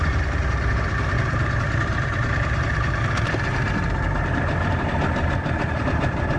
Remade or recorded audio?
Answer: remade